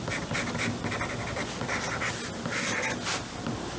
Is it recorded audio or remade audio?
recorded